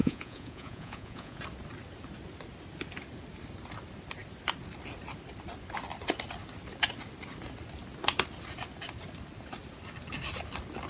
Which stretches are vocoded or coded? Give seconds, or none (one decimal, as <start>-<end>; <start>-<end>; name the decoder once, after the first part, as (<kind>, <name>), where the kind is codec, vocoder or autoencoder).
0.0-1.4 (vocoder, Vocos)